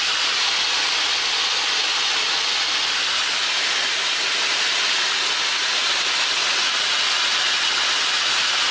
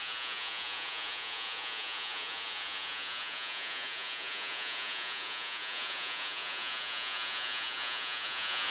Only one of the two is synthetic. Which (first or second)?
second